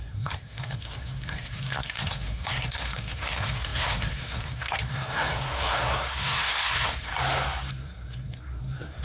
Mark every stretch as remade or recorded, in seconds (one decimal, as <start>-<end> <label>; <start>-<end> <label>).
0.0-7.1 remade; 7.1-7.7 recorded; 7.7-9.0 remade